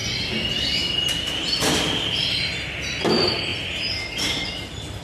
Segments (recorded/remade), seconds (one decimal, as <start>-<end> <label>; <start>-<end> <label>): 0.0-5.0 recorded

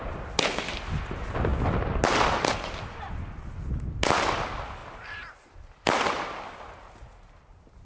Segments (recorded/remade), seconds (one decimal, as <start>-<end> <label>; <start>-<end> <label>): 0.0-7.8 recorded

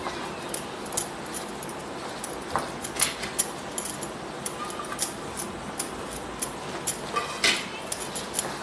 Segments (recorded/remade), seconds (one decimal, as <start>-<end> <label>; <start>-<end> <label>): 0.0-1.8 recorded; 1.8-2.3 remade; 2.3-8.6 recorded

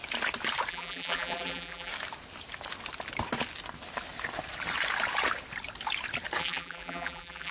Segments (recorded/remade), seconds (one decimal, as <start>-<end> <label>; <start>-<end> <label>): 0.0-0.7 recorded; 0.7-1.9 remade; 1.9-6.4 recorded; 6.4-7.5 remade

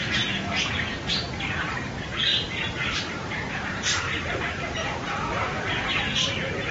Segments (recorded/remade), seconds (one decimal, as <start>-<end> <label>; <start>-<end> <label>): 0.0-0.7 remade; 0.7-2.3 recorded; 2.3-6.0 remade; 6.0-6.7 recorded

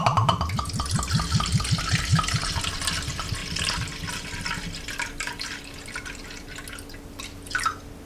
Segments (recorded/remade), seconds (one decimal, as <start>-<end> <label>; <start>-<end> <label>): 0.0-8.1 recorded

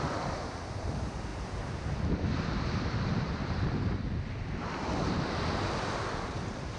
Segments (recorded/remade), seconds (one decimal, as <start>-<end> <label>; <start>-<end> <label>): 0.0-6.8 recorded

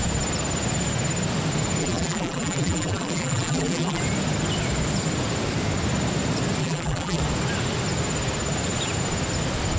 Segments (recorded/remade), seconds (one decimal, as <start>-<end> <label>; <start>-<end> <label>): 0.0-1.8 recorded; 1.8-4.0 remade; 4.0-6.6 recorded; 6.6-7.2 remade; 7.2-9.8 recorded